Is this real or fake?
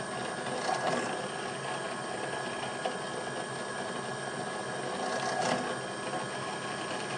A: real